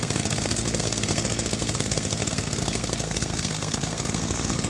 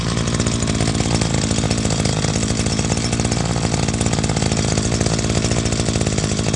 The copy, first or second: first